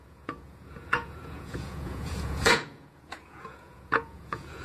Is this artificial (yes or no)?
yes